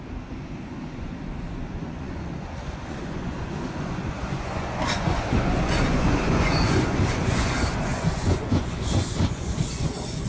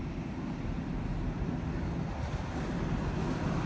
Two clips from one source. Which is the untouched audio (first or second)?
second